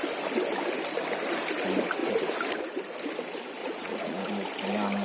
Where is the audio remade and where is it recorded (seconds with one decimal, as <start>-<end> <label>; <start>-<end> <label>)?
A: 0.0-3.6 recorded; 3.6-4.3 remade; 4.3-5.0 recorded